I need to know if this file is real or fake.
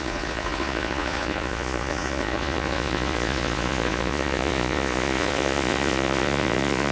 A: fake